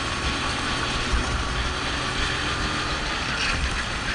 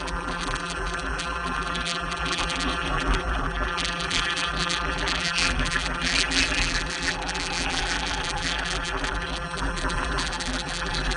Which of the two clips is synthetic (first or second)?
second